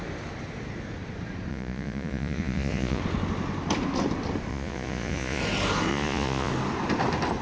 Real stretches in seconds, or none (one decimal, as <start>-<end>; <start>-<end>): 0.0-1.5; 3.0-4.5; 5.4-5.9; 6.5-7.4